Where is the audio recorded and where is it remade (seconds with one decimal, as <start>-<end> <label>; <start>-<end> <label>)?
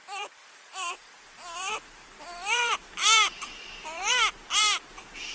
0.0-5.3 remade